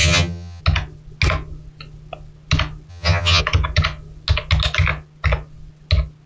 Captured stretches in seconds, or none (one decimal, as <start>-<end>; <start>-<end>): 0.6-2.9; 3.4-6.3